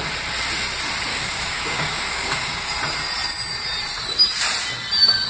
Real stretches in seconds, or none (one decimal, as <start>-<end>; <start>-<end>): 0.0-1.1; 2.7-5.3